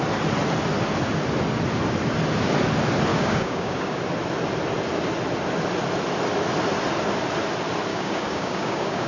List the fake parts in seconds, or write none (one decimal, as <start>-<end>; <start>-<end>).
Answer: 3.1-4.0; 7.9-9.1